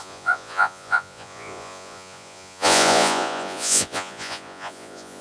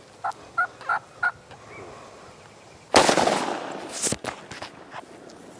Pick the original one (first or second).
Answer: second